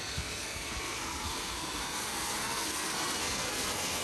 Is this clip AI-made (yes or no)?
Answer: yes